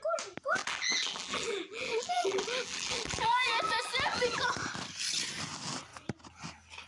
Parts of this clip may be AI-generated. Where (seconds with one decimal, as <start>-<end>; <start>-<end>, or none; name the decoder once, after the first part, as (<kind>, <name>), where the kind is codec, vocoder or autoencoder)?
0.6-4.5 (vocoder, BigVGAN v2)